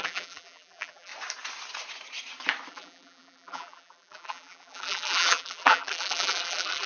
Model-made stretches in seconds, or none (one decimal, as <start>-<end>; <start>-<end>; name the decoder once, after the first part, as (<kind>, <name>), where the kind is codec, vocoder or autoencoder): 0.0-1.1 (vocoder, BigVGAN v2); 2.7-6.9